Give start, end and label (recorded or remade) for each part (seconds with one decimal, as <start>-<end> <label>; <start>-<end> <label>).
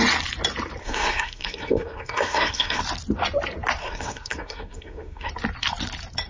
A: 0.0-0.8 recorded; 0.8-2.8 remade; 2.8-3.8 recorded; 3.8-5.3 remade; 5.3-6.3 recorded